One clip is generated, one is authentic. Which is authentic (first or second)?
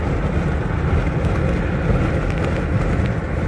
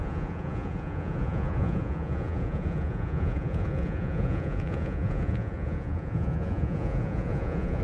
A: first